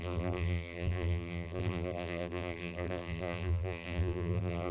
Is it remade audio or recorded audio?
remade